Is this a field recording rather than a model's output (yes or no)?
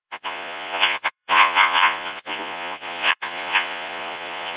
no